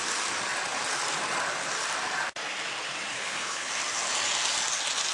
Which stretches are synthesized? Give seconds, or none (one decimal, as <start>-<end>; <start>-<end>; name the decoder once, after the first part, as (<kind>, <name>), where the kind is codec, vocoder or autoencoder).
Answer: 3.1-3.7 (codec, HILCodec)